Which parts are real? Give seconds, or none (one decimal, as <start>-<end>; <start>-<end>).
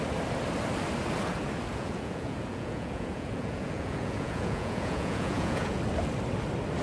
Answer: 0.0-1.7; 5.8-6.8